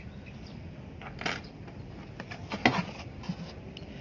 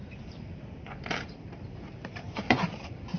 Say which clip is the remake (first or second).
second